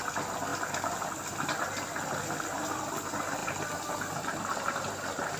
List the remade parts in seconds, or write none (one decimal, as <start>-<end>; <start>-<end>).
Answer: none

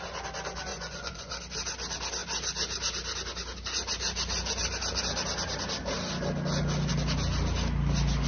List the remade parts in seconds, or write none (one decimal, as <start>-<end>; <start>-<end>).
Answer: 0.7-1.3

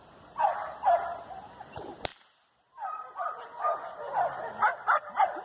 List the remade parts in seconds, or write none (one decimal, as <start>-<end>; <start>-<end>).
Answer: none

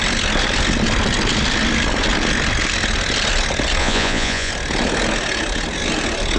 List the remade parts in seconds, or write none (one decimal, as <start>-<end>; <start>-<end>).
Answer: 3.8-4.5

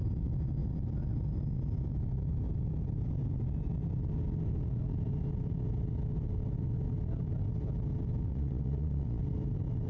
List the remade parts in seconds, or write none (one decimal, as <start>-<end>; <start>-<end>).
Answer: 8.3-9.2